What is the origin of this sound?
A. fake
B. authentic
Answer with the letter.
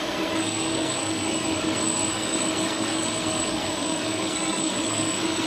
A